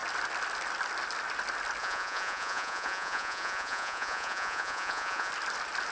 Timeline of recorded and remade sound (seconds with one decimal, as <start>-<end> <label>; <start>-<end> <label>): 0.0-1.8 recorded; 1.8-5.3 remade; 5.3-5.9 recorded